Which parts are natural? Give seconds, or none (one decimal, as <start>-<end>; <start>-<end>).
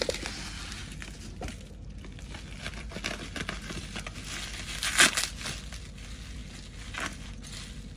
0.0-8.0